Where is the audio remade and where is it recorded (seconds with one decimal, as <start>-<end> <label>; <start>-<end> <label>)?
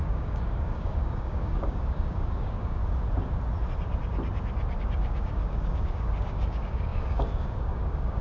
0.0-2.8 remade; 2.8-4.8 recorded; 4.8-8.2 remade